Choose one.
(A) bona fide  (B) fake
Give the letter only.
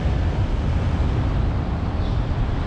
B